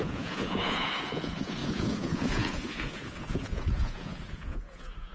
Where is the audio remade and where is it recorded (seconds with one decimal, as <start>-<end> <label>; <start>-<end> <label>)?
0.0-5.1 remade